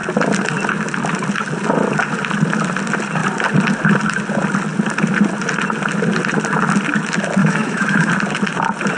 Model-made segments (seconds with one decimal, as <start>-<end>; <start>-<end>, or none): 7.4-8.1